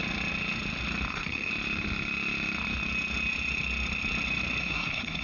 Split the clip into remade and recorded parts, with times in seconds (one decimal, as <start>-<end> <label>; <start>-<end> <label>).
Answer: 0.0-1.1 recorded; 1.1-1.5 remade; 1.5-4.6 recorded; 4.6-5.2 remade